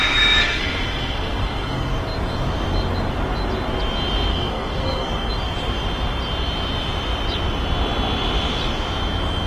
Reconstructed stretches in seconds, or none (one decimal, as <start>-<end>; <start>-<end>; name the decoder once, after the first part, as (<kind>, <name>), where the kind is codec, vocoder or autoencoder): 0.4-1.9 (codec, SNAC); 4.3-5.3